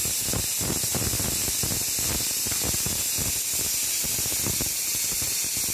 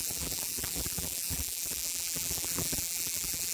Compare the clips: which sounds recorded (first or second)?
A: first